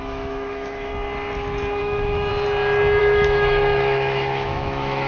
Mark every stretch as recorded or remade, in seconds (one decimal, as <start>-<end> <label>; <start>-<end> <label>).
0.0-0.9 remade; 0.9-1.8 recorded; 1.8-2.3 remade; 2.3-3.0 recorded; 3.0-5.1 remade